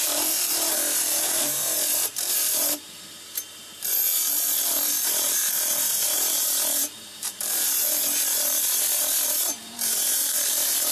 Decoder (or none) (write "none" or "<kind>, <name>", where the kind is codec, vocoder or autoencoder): vocoder, BigVGAN v2